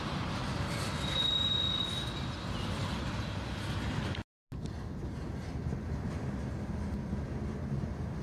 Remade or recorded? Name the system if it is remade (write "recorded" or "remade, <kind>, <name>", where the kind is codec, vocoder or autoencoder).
recorded